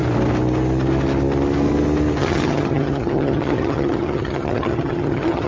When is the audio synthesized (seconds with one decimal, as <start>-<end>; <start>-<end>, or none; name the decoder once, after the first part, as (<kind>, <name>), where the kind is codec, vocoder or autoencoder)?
2.2-5.5 (vocoder, HiFi-GAN)